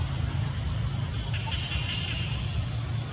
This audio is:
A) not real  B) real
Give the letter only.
B